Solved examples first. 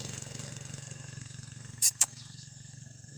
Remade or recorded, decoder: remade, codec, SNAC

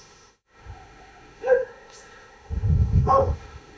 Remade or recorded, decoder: remade, autoencoder, DAC-VAE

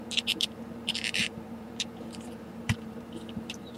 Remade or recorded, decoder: remade, vocoder, BigVGAN v2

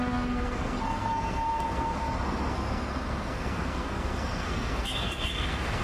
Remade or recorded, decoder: remade, codec, SNAC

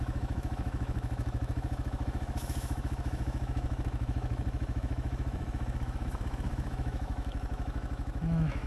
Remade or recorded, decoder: remade, autoencoder, DAC-VAE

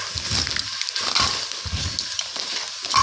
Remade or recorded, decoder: recorded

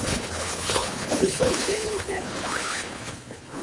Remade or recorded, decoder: remade, codec, HILCodec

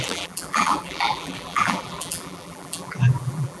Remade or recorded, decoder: remade, vocoder, BigVGAN v2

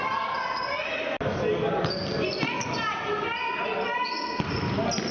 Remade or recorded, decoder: recorded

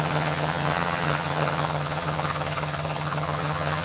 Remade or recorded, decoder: remade, vocoder, HiFi-GAN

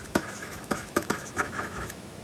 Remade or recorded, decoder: remade, autoencoder, DAC-VAE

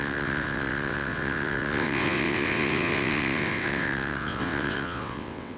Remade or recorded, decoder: remade, vocoder, WaveNeXt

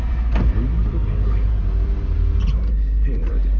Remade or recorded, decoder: remade, vocoder, BigVGAN v2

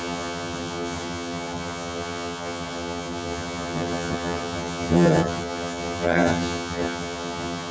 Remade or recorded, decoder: remade, vocoder, HiFi-GAN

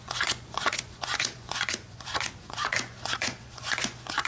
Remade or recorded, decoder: remade, vocoder, Vocos